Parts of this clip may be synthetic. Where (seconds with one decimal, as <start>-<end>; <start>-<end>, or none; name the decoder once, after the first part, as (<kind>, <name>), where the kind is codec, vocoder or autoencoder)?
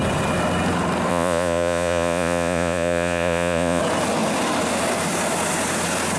1.1-3.8 (vocoder, Vocos)